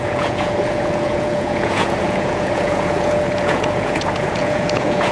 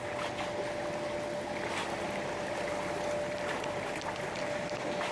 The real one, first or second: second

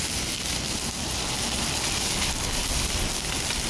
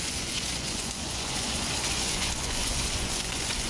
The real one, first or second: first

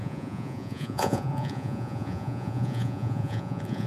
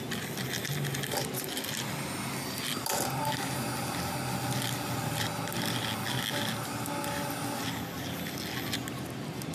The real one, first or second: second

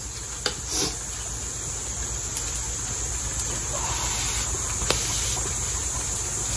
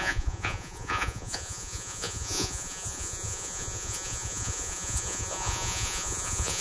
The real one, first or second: first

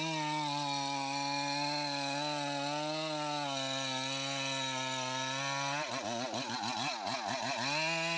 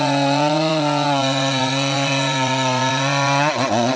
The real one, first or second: first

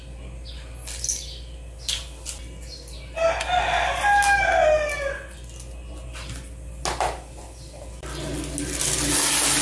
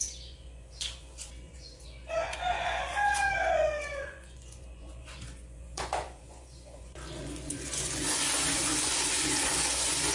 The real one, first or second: first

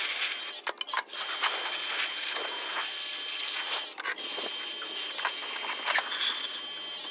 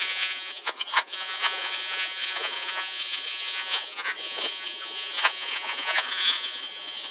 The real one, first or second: first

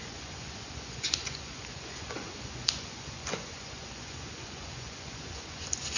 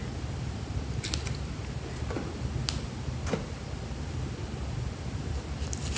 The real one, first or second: second